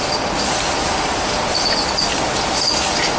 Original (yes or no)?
yes